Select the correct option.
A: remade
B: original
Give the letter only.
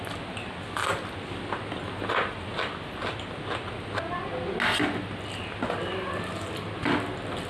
B